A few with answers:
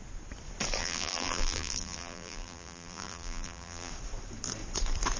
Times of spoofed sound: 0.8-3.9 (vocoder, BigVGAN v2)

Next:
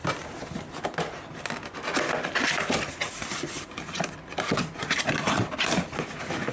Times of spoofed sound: none